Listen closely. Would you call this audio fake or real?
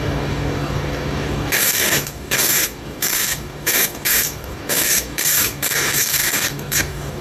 fake